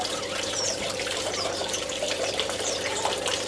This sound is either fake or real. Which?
fake